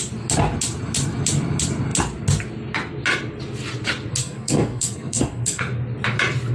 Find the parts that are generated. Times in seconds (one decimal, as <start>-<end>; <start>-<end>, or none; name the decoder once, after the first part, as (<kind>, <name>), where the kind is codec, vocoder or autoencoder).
4.2-5.6 (codec, SNAC)